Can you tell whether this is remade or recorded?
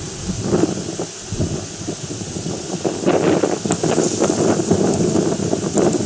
recorded